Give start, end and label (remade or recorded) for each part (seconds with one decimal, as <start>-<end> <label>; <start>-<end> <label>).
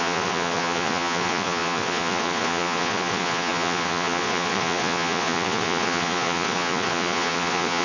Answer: 0.0-7.8 remade